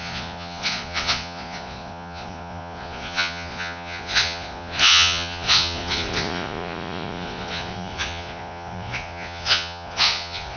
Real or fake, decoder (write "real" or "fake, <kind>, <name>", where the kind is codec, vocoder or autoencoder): fake, vocoder, Vocos